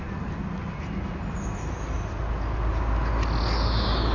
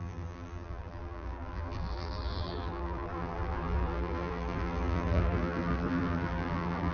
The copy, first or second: second